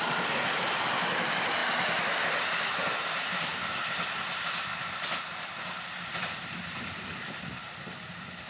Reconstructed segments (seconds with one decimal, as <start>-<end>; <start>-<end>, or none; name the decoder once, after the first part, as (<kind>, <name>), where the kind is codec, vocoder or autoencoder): 0.0-1.6 (vocoder, BigVGAN v2); 2.7-3.5; 6.2-8.5